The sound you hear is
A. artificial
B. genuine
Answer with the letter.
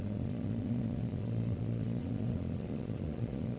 A